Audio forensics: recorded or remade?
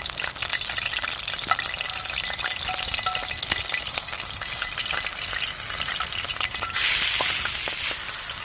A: recorded